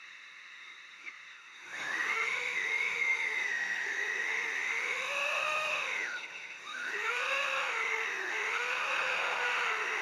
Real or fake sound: fake